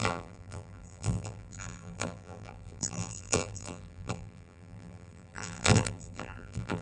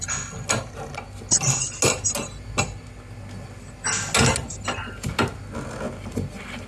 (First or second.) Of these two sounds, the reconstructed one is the first